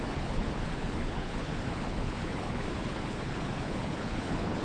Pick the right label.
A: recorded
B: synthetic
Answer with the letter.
B